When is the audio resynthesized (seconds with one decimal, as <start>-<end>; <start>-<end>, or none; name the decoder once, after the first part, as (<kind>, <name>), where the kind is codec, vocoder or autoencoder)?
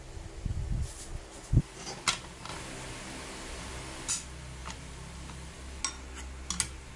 4.6-5.5 (vocoder, BigVGAN v2)